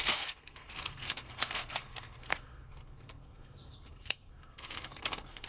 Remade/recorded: remade